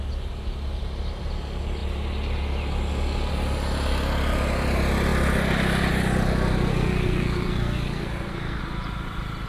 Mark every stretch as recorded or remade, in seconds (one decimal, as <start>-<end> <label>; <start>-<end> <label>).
0.0-6.7 recorded; 6.7-8.6 remade; 8.6-9.5 recorded